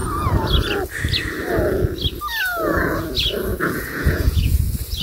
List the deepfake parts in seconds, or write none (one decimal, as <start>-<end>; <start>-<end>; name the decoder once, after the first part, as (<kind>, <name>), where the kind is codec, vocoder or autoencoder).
3.5-4.6 (vocoder, Vocos)